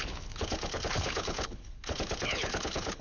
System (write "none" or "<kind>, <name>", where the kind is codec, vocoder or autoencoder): codec, HILCodec